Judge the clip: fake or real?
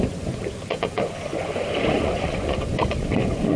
fake